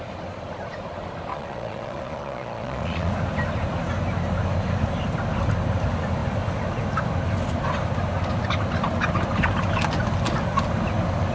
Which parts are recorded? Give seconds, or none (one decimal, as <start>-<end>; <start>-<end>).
0.0-1.3; 3.1-11.3